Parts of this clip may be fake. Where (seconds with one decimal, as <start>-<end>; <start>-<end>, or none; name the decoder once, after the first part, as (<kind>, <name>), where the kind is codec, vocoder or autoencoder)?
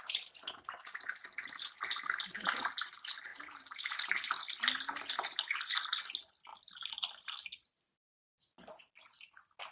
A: none